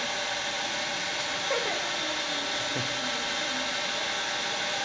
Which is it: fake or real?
real